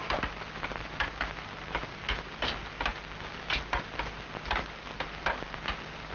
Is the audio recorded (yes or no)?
yes